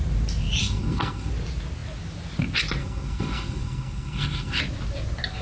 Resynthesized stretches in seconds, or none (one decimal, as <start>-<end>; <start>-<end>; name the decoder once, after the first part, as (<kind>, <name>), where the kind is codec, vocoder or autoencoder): 0.6-1.3 (codec, SNAC); 2.8-4.6